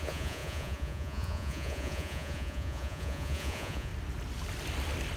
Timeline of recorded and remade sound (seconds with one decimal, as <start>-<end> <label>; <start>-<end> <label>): 0.0-3.9 remade; 3.9-5.2 recorded